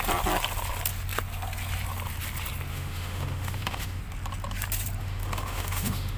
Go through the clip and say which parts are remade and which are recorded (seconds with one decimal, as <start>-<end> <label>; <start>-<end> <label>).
0.0-2.7 recorded; 2.7-4.0 remade; 4.0-5.0 recorded; 5.0-6.2 remade